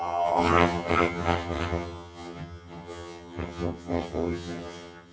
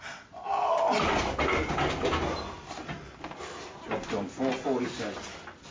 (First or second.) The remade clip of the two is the first